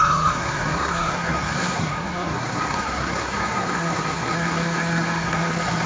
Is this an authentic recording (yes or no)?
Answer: no